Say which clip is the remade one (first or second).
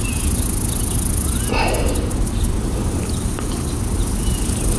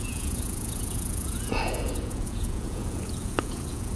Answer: second